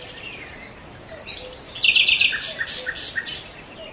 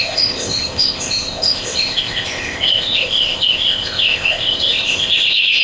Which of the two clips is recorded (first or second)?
first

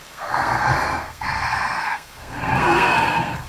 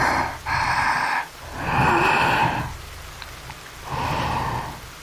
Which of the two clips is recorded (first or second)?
second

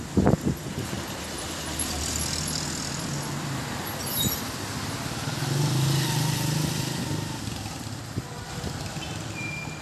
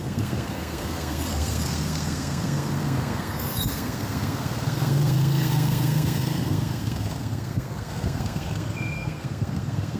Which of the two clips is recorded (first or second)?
first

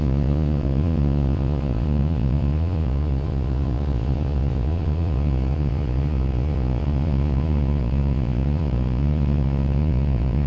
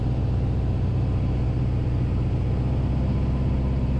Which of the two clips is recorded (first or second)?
second